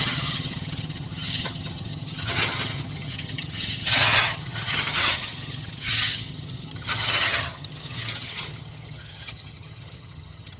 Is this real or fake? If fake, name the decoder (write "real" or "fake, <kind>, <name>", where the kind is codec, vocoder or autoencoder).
fake, vocoder, HiFi-GAN